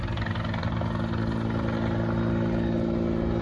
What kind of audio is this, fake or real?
real